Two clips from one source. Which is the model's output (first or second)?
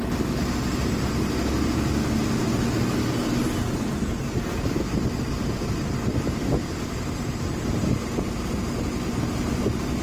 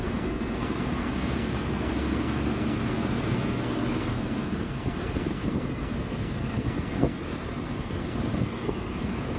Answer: second